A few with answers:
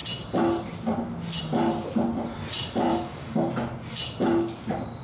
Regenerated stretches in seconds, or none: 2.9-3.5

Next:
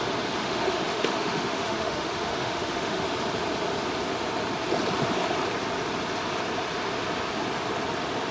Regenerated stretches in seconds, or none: 0.4-3.0

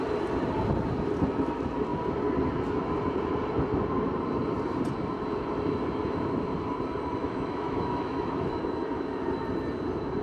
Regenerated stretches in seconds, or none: 7.2-8.6

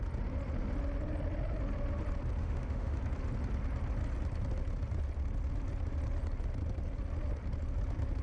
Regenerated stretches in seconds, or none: 2.4-3.0